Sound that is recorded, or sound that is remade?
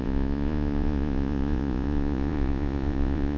remade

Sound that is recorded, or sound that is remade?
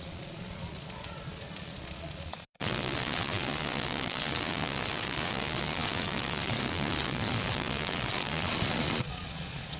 remade